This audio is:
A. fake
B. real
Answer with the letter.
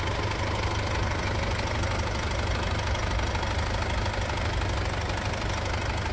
B